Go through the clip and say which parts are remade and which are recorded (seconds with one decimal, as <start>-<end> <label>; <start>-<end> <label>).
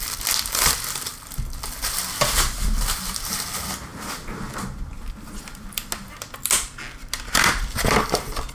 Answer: 0.0-8.5 recorded